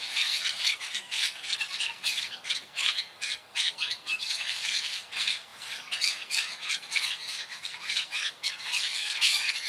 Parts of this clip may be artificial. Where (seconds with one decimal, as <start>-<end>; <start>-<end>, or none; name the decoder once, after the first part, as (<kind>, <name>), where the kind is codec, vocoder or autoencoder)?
0.0-9.7 (codec, SNAC)